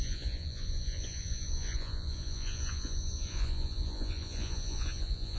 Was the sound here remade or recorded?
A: remade